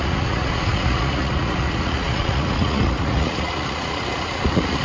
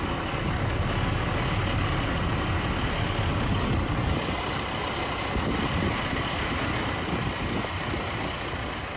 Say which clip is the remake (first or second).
first